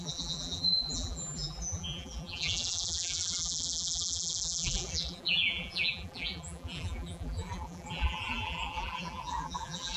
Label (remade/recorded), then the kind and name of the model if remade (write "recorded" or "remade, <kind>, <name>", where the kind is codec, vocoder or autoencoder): remade, vocoder, BigVGAN v2